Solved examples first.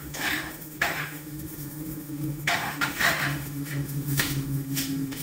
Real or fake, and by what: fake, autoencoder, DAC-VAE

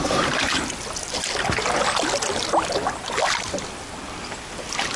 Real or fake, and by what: real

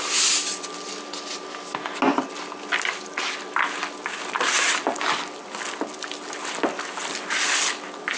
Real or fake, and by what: real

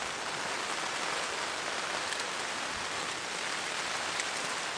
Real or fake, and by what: real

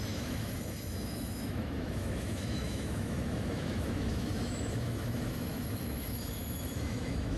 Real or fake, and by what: fake, autoencoder, DAC-VAE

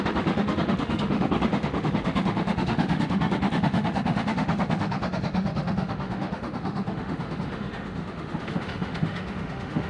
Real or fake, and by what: fake, autoencoder, DAC-VAE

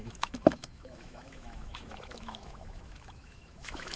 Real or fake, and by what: fake, autoencoder, DAC-VAE